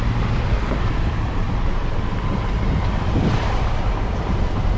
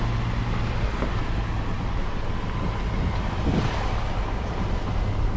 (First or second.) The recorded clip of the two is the second